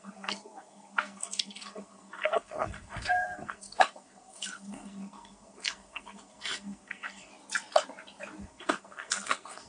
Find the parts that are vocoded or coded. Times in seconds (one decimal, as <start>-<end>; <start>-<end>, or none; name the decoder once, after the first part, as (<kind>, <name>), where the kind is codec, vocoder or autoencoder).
0.0-7.3 (codec, SNAC); 8.4-9.7